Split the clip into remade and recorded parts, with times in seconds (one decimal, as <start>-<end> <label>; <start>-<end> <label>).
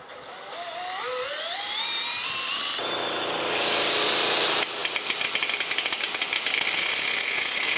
0.0-7.8 recorded